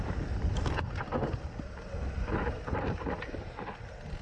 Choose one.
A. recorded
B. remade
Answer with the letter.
A